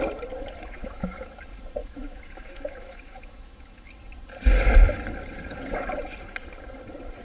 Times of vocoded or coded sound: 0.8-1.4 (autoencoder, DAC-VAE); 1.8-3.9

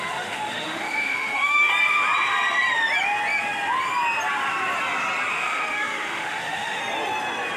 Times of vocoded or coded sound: 0.0-1.7 (autoencoder, DAC-VAE); 5.3-6.8